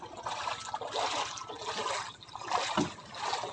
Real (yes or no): yes